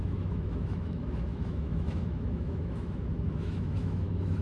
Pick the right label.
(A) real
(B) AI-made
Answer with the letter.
B